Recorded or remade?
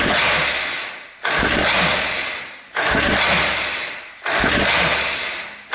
recorded